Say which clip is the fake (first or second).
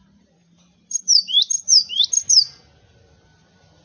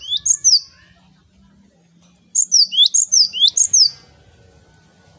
first